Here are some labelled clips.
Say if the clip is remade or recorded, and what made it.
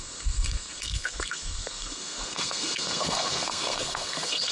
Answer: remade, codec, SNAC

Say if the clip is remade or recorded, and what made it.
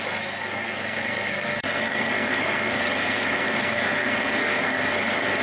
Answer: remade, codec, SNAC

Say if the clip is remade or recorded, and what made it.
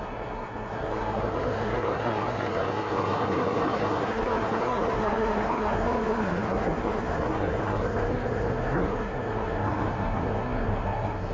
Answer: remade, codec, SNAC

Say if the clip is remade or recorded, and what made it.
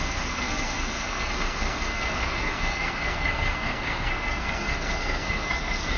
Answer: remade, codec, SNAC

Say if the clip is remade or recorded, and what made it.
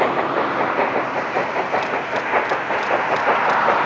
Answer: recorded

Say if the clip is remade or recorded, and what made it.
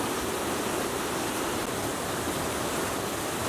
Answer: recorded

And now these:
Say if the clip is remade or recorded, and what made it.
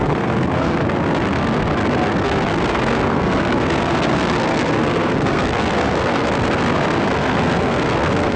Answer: remade, codec, SNAC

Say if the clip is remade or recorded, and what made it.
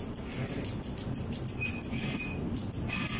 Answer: recorded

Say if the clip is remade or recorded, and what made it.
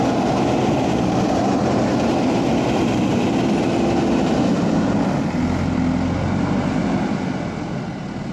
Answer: recorded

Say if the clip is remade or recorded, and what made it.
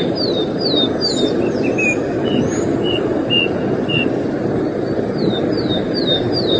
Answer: recorded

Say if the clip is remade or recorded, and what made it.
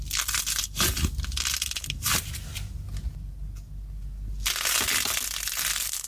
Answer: recorded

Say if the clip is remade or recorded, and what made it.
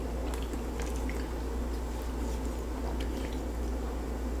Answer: recorded